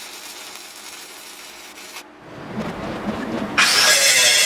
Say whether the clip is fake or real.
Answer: real